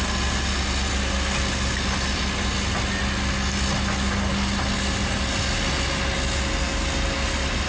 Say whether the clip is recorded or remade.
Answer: recorded